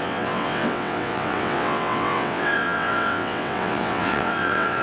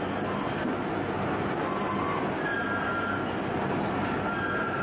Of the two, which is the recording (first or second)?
second